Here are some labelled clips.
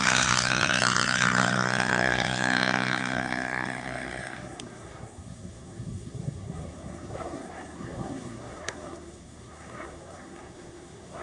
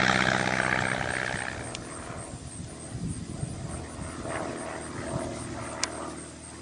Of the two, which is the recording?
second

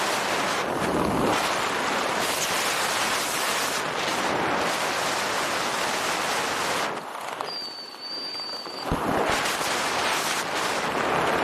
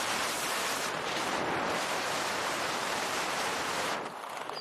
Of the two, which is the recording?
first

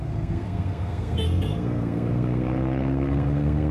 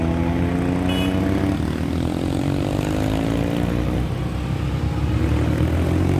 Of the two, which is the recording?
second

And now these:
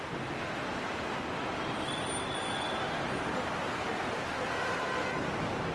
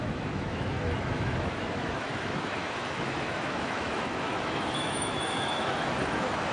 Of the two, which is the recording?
first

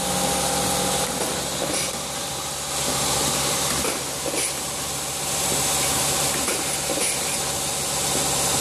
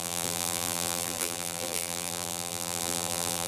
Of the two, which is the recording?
first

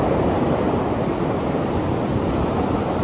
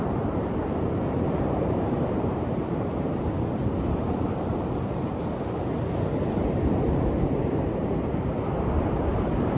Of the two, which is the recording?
first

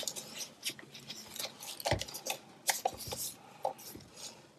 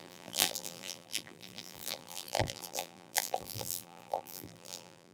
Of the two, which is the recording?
first